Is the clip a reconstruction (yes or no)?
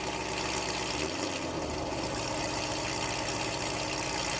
no